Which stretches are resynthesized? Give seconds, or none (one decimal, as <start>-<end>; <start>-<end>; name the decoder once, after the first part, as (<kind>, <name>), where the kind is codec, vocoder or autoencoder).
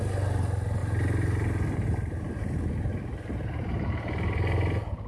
none